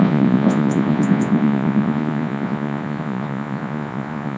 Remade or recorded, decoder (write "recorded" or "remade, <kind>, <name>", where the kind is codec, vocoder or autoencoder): remade, vocoder, Vocos